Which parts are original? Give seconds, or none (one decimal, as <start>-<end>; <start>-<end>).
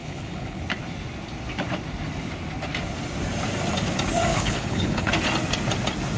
0.6-4.3; 5.1-6.2